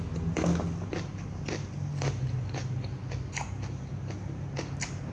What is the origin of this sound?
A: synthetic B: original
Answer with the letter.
B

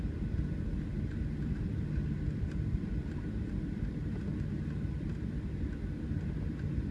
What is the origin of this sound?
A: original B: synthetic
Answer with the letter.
A